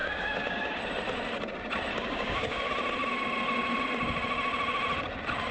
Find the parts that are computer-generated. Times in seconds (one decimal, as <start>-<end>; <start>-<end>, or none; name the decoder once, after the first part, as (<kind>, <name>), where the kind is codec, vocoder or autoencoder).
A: 0.0-0.8 (codec, DAC); 1.9-2.7